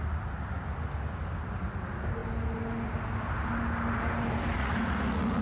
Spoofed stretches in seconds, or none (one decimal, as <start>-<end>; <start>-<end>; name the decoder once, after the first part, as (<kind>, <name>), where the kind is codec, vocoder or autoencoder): 4.6-5.4 (vocoder, Vocos)